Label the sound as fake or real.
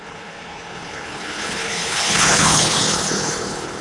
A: fake